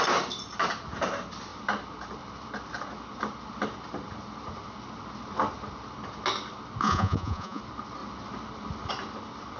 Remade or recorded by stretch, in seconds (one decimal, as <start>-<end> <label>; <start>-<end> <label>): 0.0-6.8 recorded; 6.8-7.6 remade; 7.6-9.6 recorded